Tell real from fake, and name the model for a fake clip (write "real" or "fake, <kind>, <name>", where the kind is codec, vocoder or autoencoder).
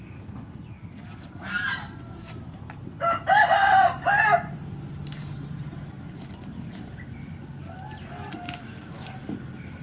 real